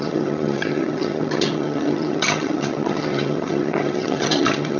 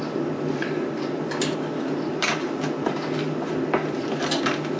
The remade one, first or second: first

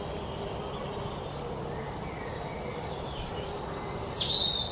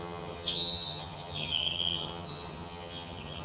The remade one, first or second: second